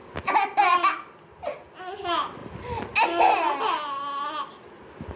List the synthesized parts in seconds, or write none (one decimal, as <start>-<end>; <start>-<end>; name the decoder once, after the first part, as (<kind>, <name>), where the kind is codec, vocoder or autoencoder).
none